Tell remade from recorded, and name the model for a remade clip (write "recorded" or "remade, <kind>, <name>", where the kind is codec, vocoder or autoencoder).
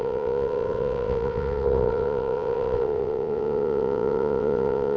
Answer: remade, vocoder, WaveNeXt